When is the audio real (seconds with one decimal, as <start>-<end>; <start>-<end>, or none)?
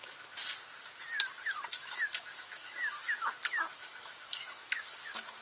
0.4-1.7; 3.0-3.7